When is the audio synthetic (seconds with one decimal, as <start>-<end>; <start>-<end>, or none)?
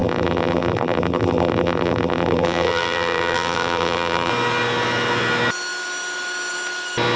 0.0-4.3